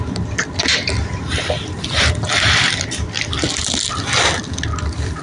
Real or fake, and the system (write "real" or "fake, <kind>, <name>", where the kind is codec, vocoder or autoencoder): real